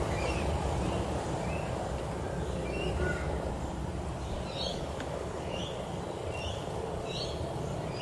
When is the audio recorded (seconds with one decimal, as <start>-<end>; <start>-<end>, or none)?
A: 0.0-4.7; 5.6-8.0